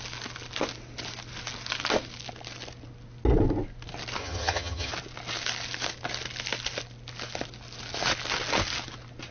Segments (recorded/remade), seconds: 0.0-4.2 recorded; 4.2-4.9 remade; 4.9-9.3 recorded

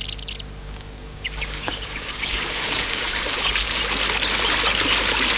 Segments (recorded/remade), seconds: 0.0-0.6 recorded; 0.6-3.8 remade; 3.8-5.4 recorded

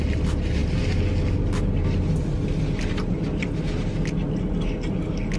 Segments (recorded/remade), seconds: 0.0-5.4 recorded

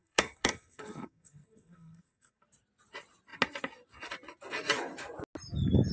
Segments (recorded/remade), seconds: 0.0-2.4 remade; 2.4-5.9 recorded